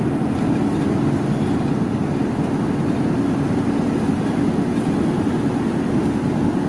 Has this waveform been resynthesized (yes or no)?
no